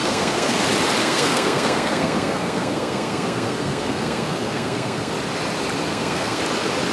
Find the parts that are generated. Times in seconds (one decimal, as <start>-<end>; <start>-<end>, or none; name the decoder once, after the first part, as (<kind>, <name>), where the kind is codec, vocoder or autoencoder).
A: 0.0-0.6 (codec, SNAC); 1.0-5.1; 5.9-6.4